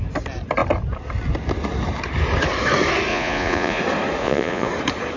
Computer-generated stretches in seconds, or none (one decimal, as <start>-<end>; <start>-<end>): 3.1-3.8; 4.2-4.7